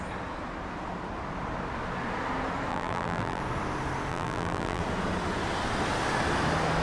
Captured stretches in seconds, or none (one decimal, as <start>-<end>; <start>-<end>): 0.0-2.7; 3.4-4.1; 4.8-6.8